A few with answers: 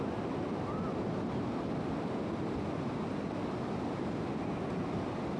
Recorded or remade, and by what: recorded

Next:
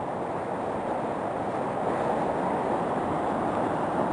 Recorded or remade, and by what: recorded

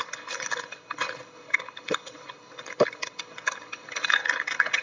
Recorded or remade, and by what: remade, codec, HILCodec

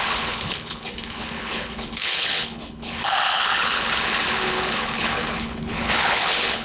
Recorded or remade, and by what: remade, codec, HILCodec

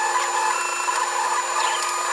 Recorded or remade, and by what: recorded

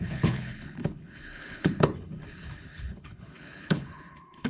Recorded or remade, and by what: remade, codec, HILCodec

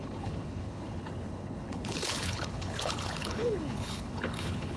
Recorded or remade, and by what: remade, codec, HILCodec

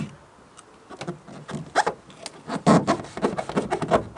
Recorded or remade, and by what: recorded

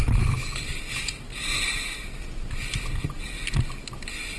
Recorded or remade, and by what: recorded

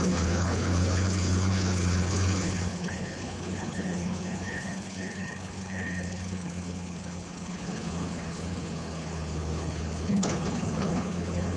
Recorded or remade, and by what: remade, codec, HILCodec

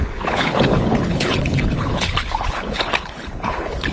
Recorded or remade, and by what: remade, codec, HILCodec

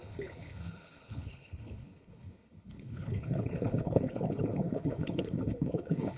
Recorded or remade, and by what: remade, codec, HILCodec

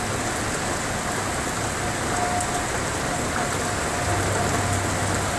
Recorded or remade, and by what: recorded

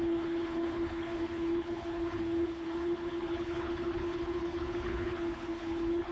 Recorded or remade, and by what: remade, codec, HILCodec